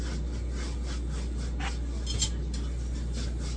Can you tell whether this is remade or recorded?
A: recorded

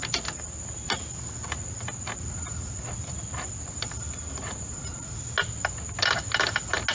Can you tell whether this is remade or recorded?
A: recorded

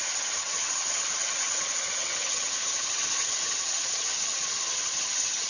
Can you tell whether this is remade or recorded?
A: remade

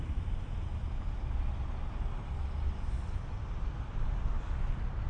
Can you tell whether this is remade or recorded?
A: recorded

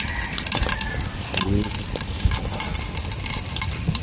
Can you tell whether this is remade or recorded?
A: recorded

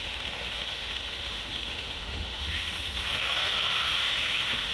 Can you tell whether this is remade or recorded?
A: remade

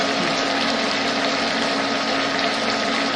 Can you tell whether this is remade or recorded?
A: recorded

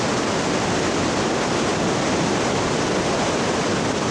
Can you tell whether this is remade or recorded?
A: recorded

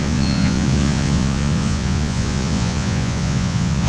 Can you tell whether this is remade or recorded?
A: remade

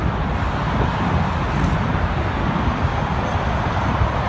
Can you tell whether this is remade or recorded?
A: recorded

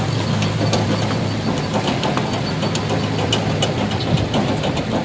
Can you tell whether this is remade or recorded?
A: recorded